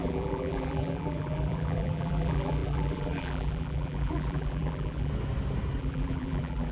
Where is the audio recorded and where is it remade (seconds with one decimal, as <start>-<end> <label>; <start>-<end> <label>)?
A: 0.0-5.1 remade; 5.1-5.8 recorded; 5.8-6.7 remade